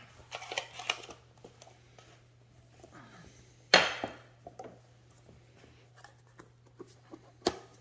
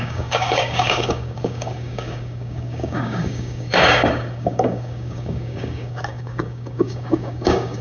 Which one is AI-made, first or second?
second